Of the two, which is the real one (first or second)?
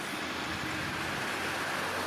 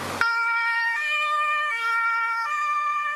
first